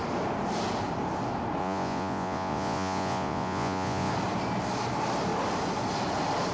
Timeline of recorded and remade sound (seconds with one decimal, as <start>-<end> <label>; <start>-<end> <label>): 0.0-1.6 recorded; 1.6-4.1 remade; 4.1-6.5 recorded